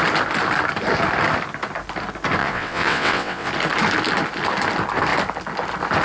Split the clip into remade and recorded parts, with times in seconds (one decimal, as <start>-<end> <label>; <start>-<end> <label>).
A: 0.0-2.4 recorded; 2.4-3.5 remade; 3.5-6.0 recorded